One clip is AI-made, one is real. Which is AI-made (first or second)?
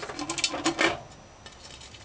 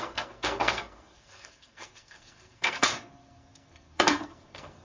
second